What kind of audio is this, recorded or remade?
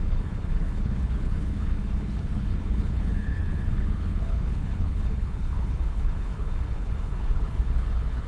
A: remade